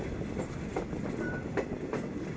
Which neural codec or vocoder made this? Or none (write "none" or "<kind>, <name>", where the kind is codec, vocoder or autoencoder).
none